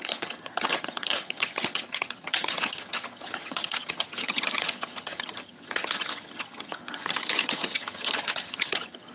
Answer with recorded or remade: remade